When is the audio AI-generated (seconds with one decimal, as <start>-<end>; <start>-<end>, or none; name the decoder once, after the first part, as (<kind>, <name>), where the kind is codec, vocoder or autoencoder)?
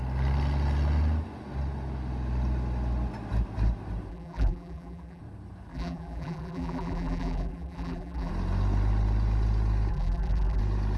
4.1-5.2 (vocoder, BigVGAN v2); 5.7-8.3; 9.9-10.6